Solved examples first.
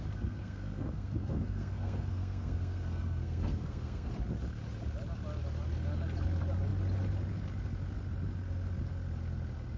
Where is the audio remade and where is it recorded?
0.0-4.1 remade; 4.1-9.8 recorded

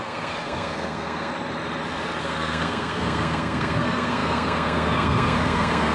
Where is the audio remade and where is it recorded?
0.0-1.3 remade; 1.3-2.2 recorded; 2.2-5.9 remade

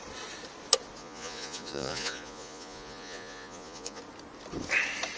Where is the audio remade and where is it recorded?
0.0-1.0 recorded; 1.0-4.0 remade; 4.0-5.2 recorded

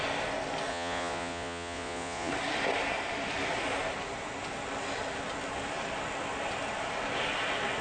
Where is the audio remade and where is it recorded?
0.0-0.7 recorded; 0.7-2.3 remade; 2.3-7.8 recorded

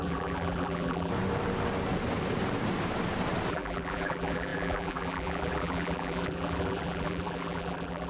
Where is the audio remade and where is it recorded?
0.0-1.1 remade; 1.1-3.5 recorded; 3.5-8.1 remade

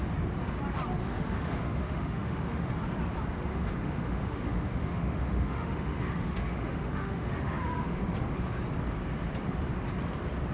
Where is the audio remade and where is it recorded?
0.0-1.0 recorded; 1.0-2.7 remade; 2.7-3.5 recorded; 3.5-8.0 remade; 8.0-10.5 recorded